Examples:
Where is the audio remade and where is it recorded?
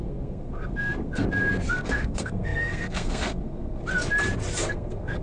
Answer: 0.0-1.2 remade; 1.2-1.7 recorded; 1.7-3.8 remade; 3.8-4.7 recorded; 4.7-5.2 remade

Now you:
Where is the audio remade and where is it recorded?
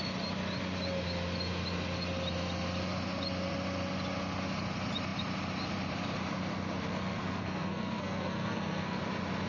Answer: 0.0-6.9 recorded; 6.9-9.0 remade; 9.0-9.5 recorded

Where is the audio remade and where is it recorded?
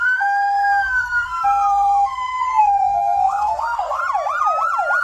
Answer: 0.0-4.0 remade; 4.0-5.0 recorded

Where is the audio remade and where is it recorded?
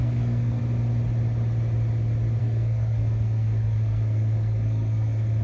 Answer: 0.0-0.6 remade; 0.6-2.4 recorded; 2.4-5.4 remade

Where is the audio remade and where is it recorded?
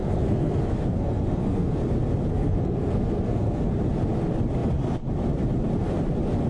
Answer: 0.0-1.8 remade; 1.8-2.3 recorded; 2.3-3.6 remade; 3.6-6.5 recorded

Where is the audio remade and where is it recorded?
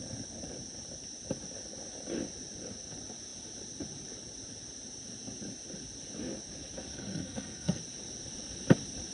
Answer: 0.0-6.9 recorded; 6.9-7.8 remade; 7.8-9.1 recorded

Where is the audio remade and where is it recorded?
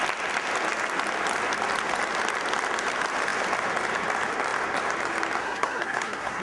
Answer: 0.0-5.4 recorded; 5.4-6.4 remade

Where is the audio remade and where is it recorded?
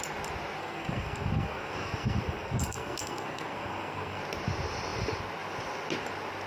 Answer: 0.0-0.6 recorded; 0.6-4.2 remade; 4.2-6.5 recorded